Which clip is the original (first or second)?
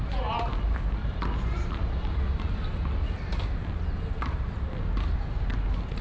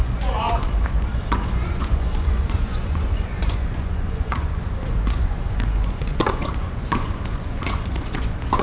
first